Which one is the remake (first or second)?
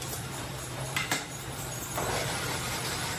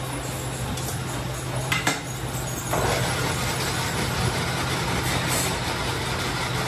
first